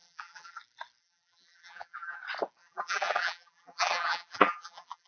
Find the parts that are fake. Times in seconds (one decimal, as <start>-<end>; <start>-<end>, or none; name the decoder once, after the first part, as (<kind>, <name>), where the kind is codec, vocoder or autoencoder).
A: 0.0-0.6 (vocoder, BigVGAN v2); 1.0-2.2; 2.6-5.1